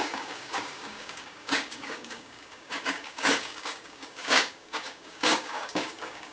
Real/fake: fake